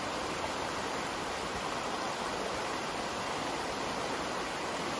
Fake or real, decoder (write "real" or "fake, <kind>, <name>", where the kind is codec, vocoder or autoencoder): real